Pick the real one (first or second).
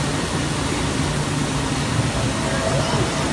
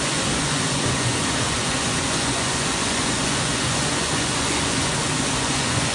first